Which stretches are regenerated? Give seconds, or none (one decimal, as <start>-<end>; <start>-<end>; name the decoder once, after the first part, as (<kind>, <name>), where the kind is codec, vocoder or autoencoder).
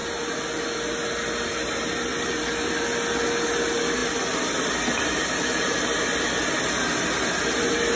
none